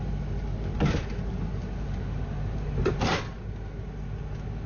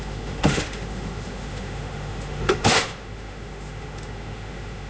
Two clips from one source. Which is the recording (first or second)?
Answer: first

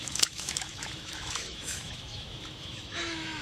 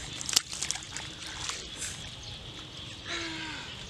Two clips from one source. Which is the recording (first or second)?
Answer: second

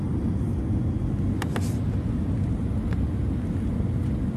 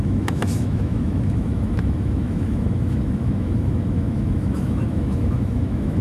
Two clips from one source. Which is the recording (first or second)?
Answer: first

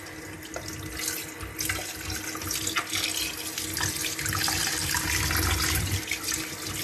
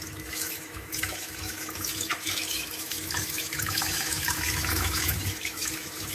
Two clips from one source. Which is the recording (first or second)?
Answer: first